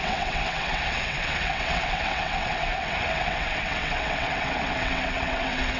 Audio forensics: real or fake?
fake